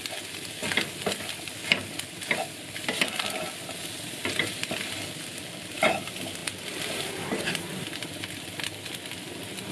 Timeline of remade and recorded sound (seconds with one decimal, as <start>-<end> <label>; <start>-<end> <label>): 0.0-9.7 recorded

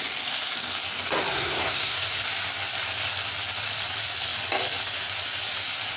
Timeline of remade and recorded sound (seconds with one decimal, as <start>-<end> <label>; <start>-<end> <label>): 0.0-1.3 recorded; 1.3-2.2 remade; 2.2-6.0 recorded

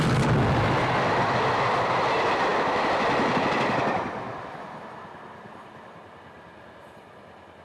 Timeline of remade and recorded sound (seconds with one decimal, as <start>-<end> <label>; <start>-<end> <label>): 0.0-7.6 recorded

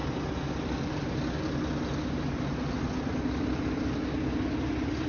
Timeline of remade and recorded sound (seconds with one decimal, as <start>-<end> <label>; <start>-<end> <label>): 0.0-5.1 recorded

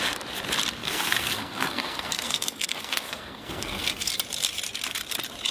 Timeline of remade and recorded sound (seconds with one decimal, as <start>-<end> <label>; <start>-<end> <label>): 0.0-0.8 recorded; 0.8-4.1 remade; 4.1-5.5 recorded